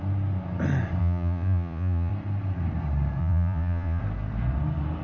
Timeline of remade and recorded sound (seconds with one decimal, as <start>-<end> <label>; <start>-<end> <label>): 0.0-1.0 recorded; 1.0-2.1 remade; 2.1-3.2 recorded; 3.2-4.0 remade; 4.0-5.0 recorded